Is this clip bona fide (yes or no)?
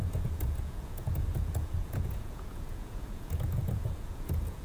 no